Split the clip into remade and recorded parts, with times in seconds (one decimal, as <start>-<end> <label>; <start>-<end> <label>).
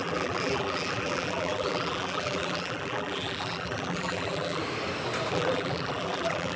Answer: 0.0-4.6 remade; 4.6-5.3 recorded; 5.3-6.6 remade